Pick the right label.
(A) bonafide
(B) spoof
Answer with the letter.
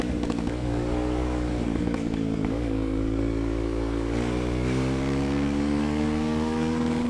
B